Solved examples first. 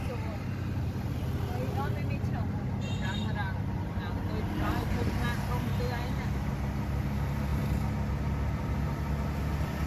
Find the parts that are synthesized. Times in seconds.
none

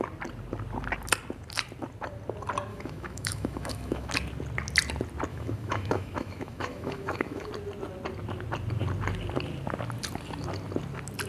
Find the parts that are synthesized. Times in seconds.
2.7-4.1 (autoencoder, DAC-VAE); 5.3-7.5

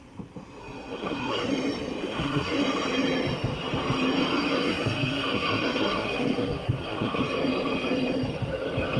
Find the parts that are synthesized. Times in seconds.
0.6-1.5 (codec, SNAC); 2.0-2.6; 4.5-7.2

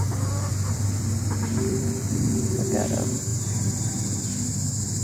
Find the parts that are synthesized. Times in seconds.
0.5-2.5 (vocoder, BigVGAN v2)